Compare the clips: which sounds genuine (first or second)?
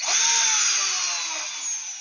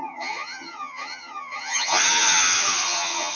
first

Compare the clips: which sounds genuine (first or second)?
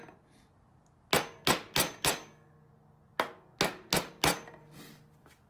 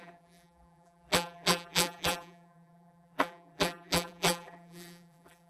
first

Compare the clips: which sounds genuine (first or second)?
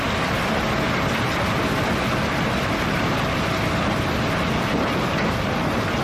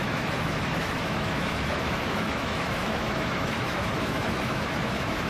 first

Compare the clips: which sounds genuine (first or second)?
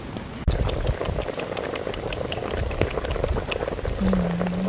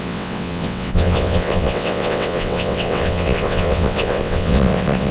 first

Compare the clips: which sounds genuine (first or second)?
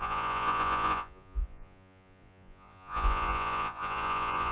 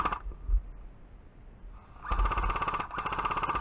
second